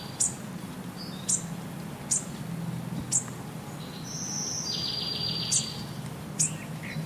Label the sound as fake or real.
real